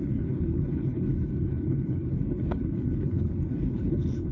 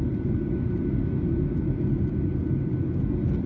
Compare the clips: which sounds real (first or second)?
second